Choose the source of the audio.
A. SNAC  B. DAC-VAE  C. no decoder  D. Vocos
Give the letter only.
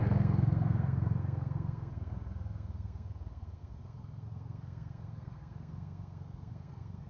A